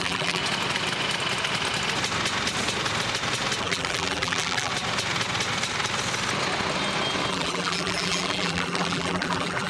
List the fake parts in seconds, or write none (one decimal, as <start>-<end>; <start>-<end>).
0.0-0.4; 3.6-4.7; 7.3-9.7